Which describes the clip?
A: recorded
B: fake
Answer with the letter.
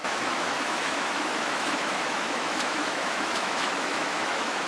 B